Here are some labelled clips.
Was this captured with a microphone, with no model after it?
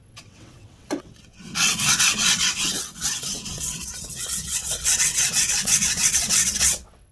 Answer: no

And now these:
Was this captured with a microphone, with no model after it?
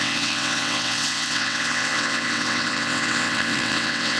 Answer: no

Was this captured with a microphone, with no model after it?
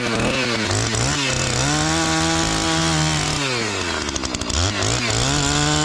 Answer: yes